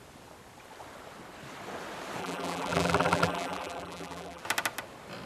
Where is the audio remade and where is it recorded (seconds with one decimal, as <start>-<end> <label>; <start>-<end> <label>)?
0.0-2.2 recorded; 2.2-4.4 remade; 4.4-5.3 recorded